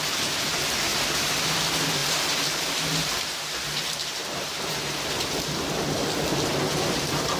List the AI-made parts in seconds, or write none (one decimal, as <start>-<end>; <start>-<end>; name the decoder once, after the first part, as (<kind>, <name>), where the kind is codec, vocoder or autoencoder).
0.9-1.4 (vocoder, BigVGAN v2); 2.0-6.0